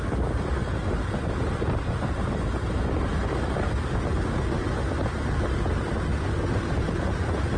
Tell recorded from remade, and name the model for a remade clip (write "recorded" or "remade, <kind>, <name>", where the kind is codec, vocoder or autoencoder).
recorded